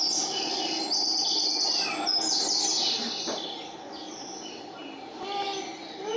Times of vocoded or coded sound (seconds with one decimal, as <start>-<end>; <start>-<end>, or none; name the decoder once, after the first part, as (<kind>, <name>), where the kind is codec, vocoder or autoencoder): none